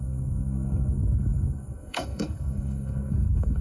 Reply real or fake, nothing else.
fake